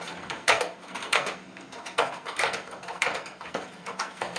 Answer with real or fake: fake